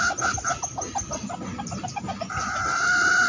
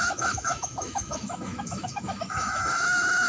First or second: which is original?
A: first